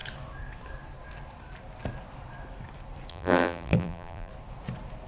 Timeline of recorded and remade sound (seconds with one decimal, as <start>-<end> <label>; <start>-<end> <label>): 0.0-3.1 recorded; 3.1-4.3 remade; 4.3-5.1 recorded